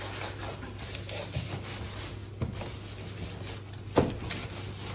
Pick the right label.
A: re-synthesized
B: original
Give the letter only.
B